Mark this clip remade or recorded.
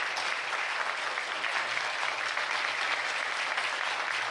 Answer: recorded